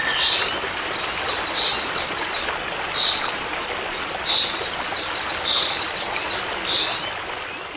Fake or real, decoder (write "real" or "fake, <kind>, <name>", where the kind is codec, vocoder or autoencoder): real